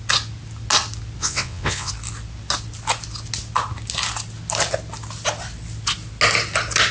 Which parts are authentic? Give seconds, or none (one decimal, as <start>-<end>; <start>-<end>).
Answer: 0.0-1.2; 1.9-6.9